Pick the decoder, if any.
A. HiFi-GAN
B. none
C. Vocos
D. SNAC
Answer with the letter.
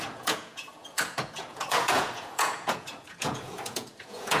C